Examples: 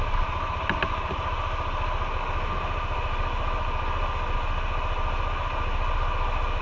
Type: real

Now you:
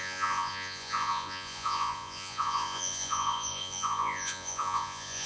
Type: fake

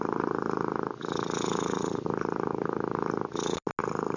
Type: real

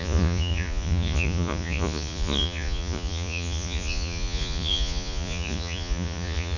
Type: fake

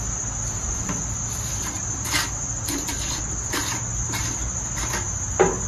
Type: real